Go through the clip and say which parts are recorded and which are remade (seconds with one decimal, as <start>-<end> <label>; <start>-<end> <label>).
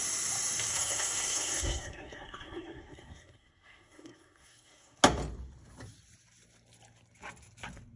0.0-0.7 recorded; 0.7-5.0 remade; 5.0-8.0 recorded